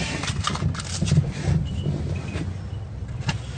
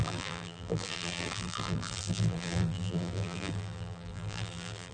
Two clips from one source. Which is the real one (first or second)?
first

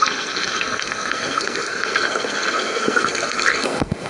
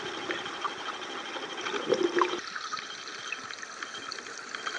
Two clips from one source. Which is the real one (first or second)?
second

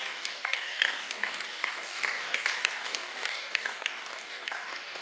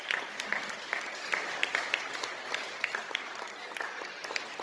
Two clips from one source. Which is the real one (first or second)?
second